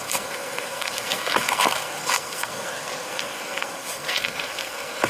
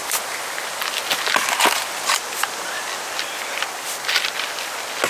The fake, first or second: first